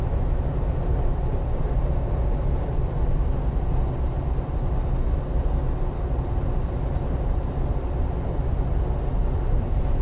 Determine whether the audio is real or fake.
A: real